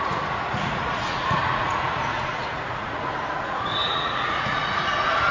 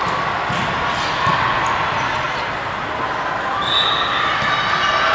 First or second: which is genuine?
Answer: second